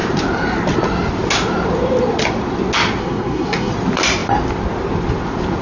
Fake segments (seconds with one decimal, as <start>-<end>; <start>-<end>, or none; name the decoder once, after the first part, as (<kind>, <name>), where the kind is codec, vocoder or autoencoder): 3.0-3.7 (codec, SNAC)